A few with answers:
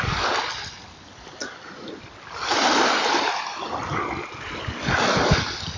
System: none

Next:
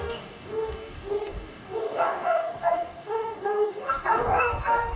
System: codec, DAC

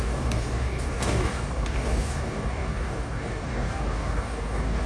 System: codec, DAC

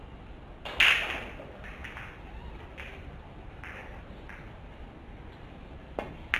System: none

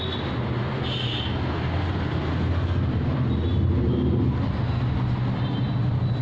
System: none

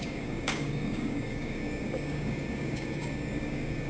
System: codec, DAC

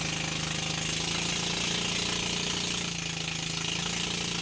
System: none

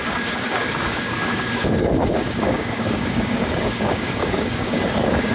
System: codec, DAC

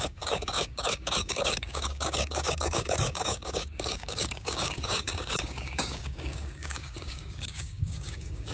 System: codec, DAC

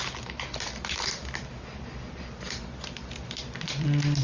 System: none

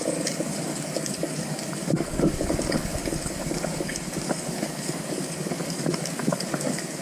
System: codec, DAC